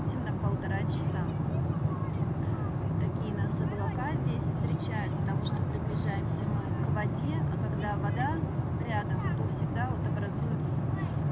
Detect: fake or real real